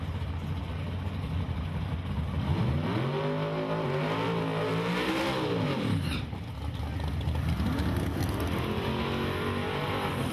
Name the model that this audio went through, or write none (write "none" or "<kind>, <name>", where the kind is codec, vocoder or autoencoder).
none